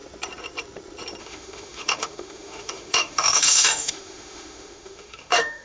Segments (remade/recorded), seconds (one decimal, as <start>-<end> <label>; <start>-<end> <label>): 0.0-1.2 recorded; 1.2-5.6 remade

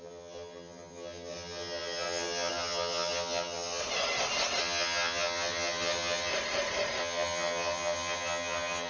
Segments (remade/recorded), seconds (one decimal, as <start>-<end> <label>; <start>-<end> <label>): 0.0-3.8 remade; 3.8-4.6 recorded; 4.6-6.3 remade; 6.3-7.0 recorded; 7.0-8.9 remade

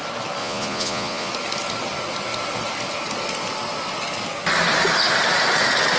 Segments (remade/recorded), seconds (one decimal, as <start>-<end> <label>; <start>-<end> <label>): 0.0-0.4 recorded; 0.4-1.3 remade; 1.3-6.0 recorded